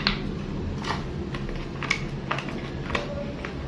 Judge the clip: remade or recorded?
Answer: recorded